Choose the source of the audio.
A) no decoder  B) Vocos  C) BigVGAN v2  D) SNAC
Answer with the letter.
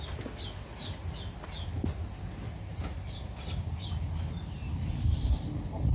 A